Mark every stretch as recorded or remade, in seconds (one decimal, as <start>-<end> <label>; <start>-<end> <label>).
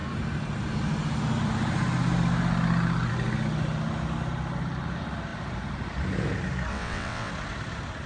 0.0-6.7 recorded; 6.7-7.3 remade; 7.3-8.1 recorded